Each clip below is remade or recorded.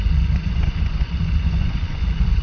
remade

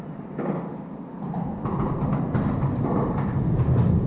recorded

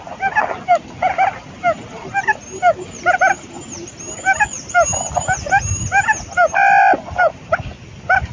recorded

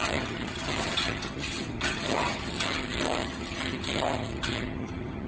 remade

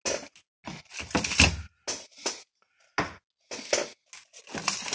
recorded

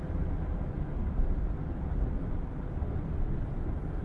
recorded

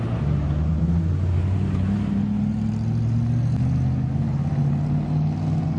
recorded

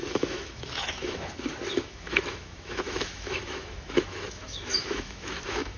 remade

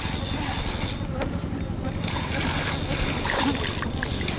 recorded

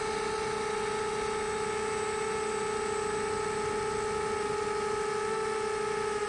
recorded